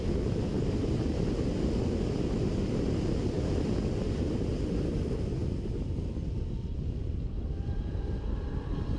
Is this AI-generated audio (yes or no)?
no